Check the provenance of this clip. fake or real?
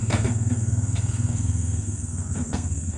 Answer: fake